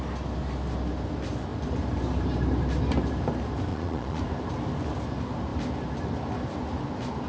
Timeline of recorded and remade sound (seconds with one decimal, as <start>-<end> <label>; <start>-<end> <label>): 0.0-3.7 recorded; 3.7-4.2 remade; 4.2-7.3 recorded